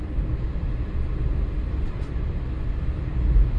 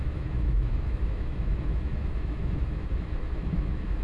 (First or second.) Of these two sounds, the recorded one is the first